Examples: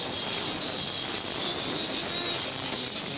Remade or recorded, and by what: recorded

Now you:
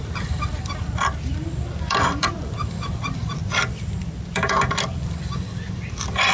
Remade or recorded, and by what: remade, vocoder, BigVGAN v2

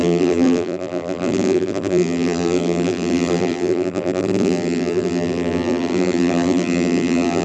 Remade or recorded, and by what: remade, vocoder, BigVGAN v2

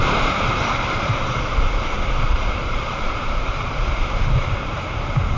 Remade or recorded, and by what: remade, vocoder, BigVGAN v2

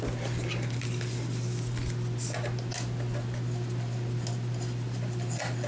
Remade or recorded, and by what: recorded